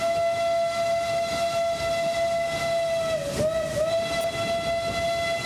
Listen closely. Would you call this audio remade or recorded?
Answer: recorded